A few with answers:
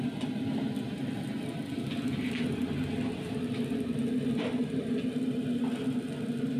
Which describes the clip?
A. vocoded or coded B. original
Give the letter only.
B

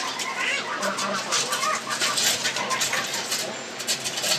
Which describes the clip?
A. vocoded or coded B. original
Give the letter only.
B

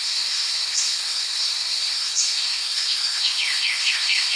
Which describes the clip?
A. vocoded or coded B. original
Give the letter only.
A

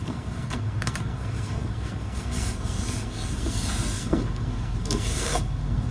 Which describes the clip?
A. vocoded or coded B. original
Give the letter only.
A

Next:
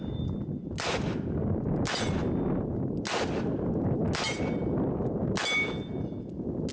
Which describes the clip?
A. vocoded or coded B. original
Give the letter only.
B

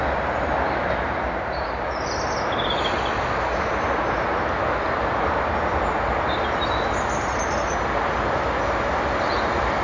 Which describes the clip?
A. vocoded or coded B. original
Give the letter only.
B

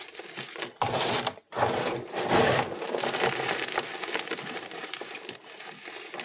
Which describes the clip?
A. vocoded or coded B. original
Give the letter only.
B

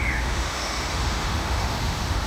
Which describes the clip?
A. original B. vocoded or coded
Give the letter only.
B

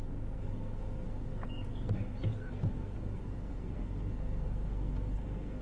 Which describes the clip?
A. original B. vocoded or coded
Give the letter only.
B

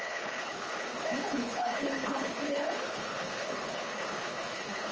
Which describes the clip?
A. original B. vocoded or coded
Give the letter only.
B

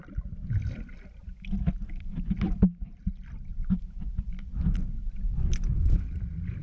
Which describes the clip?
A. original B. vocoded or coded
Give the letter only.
A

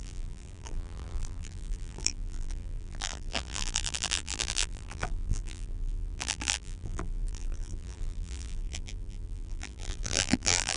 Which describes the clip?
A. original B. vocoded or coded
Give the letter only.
B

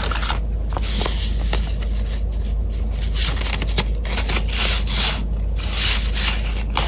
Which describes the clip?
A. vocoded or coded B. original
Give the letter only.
B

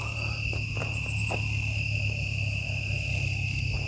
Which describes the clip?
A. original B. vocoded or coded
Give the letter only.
A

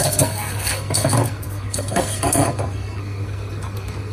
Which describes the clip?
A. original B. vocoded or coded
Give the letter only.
B